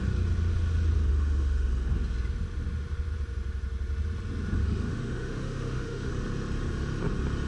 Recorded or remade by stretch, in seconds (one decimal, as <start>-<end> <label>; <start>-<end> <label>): 0.0-1.1 recorded; 1.1-1.7 remade; 1.7-4.6 recorded; 4.6-6.1 remade; 6.1-7.5 recorded